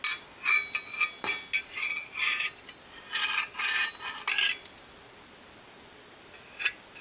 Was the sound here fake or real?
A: real